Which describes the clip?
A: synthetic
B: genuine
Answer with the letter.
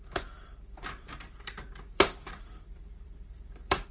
A